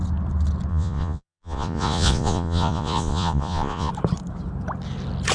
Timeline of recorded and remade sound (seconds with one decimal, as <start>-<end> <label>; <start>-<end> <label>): 0.0-0.7 recorded; 0.7-3.9 remade; 3.9-5.3 recorded